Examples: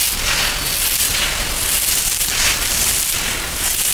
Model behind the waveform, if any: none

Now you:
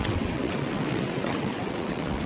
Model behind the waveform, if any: vocoder, WaveNeXt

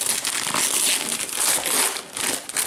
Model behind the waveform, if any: none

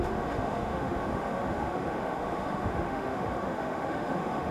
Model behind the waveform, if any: autoencoder, DAC-VAE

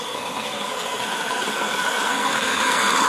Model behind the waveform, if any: codec, SNAC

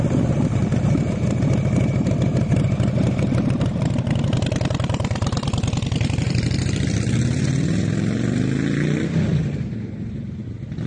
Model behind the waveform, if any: vocoder, BigVGAN v2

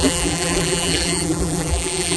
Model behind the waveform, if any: vocoder, BigVGAN v2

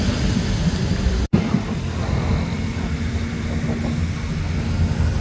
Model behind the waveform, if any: none